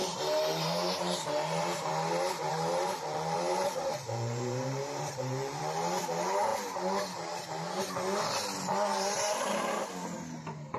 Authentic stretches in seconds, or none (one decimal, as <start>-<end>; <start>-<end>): 1.9-2.5; 5.6-8.9; 9.8-10.8